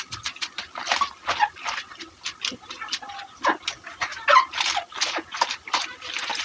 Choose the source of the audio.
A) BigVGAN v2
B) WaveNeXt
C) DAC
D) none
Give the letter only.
D